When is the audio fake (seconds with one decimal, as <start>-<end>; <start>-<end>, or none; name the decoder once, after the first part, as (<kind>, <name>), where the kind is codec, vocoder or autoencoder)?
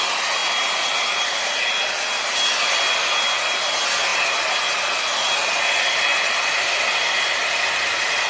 0.4-1.6 (vocoder, BigVGAN v2); 6.1-6.7